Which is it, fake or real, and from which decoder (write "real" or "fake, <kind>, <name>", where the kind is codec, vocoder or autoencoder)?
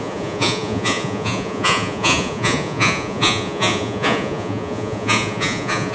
fake, vocoder, Vocos